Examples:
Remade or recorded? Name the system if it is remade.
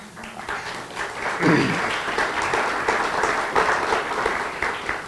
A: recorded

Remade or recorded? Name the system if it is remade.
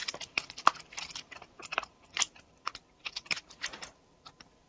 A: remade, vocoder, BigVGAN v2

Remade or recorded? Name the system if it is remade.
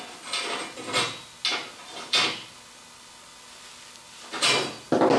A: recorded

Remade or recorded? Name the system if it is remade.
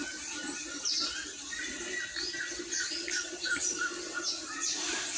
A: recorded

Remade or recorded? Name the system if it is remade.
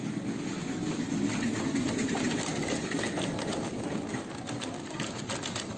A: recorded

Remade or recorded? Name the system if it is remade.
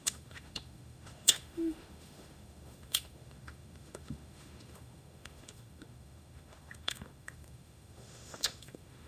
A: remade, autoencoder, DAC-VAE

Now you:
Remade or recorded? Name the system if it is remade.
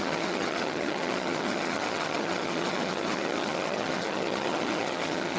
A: remade, vocoder, HiFi-GAN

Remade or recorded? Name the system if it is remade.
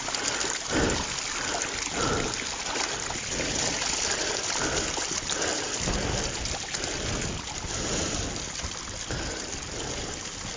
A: recorded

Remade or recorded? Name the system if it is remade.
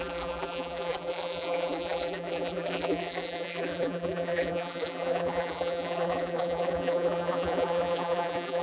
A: remade, vocoder, BigVGAN v2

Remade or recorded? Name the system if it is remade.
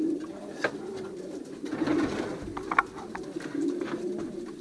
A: remade, vocoder, BigVGAN v2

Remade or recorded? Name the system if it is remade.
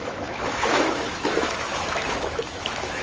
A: remade, autoencoder, DAC-VAE